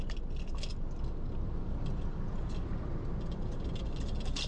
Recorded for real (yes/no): yes